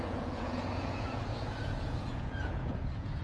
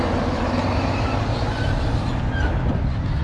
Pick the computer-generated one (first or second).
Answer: first